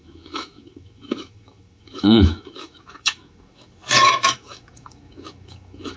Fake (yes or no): yes